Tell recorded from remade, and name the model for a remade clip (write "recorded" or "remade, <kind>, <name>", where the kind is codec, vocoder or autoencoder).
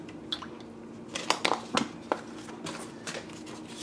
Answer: recorded